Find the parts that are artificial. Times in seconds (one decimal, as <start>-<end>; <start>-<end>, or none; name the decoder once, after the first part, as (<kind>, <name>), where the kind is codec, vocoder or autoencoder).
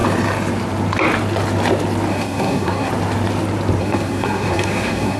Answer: 2.1-2.9 (codec, SNAC); 3.8-5.2